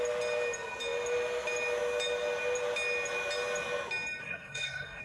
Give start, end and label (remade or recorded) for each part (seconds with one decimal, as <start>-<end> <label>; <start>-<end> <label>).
0.0-4.2 recorded; 4.2-5.0 remade